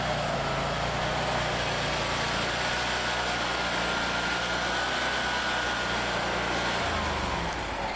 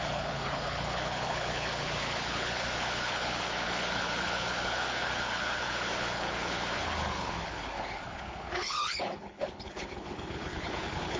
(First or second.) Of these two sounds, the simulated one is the second